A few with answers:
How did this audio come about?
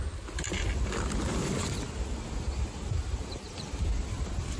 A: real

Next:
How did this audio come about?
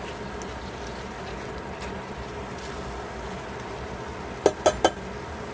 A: real